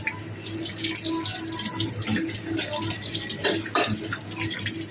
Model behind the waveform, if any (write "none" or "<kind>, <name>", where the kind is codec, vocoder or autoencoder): none